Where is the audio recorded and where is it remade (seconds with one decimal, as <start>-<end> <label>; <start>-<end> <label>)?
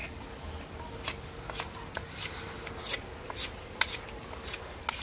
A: 0.0-5.0 recorded